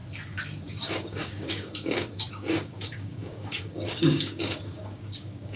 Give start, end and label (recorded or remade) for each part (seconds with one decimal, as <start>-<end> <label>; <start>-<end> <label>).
0.0-0.7 recorded; 0.7-5.6 remade